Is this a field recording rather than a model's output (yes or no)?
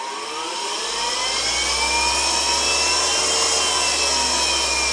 yes